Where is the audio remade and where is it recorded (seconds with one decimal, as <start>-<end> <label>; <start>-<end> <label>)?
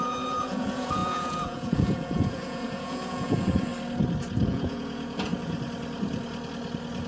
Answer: 0.0-3.7 remade; 3.7-4.5 recorded; 4.5-5.3 remade; 5.3-7.1 recorded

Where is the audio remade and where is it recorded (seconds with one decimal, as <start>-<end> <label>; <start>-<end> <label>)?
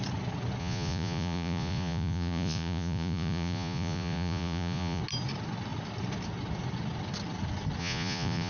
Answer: 0.0-0.6 recorded; 0.6-5.0 remade; 5.0-7.8 recorded; 7.8-8.5 remade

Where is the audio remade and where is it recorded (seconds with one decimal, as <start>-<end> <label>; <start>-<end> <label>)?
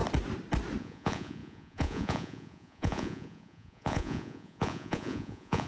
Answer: 0.0-0.8 recorded; 0.8-5.7 remade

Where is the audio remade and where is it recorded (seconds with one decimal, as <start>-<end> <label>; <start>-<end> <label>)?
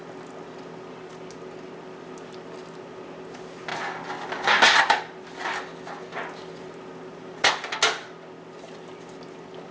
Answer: 0.0-9.7 recorded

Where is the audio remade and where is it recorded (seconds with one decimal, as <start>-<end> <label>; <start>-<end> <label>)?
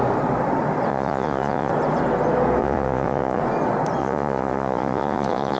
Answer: 0.0-0.9 recorded; 0.9-1.7 remade; 1.7-2.6 recorded; 2.6-3.4 remade; 3.4-4.0 recorded; 4.0-5.6 remade